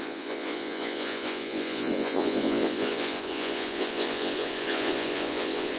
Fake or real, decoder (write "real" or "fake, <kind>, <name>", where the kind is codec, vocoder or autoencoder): fake, vocoder, Vocos